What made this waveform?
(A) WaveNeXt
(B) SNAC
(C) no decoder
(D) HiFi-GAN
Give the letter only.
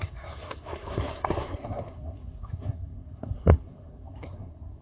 B